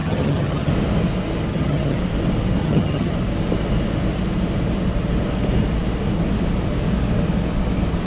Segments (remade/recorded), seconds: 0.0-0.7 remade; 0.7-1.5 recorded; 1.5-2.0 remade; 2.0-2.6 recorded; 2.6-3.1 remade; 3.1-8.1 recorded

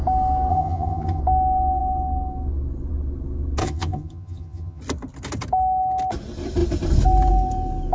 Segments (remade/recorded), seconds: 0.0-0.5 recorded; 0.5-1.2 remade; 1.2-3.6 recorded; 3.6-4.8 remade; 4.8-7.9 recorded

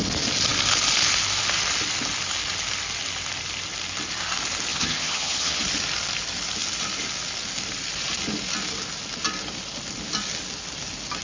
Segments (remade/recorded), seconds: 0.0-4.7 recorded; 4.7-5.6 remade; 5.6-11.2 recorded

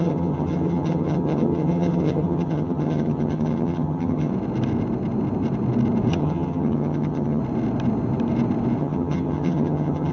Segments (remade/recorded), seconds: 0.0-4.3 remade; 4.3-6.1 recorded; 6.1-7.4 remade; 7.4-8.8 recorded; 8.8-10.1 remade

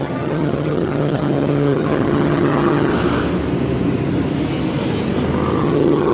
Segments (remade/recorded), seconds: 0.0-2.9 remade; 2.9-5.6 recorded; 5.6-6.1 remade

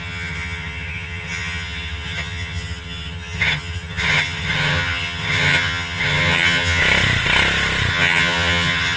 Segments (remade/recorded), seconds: 0.0-6.8 remade; 6.8-7.9 recorded; 7.9-9.0 remade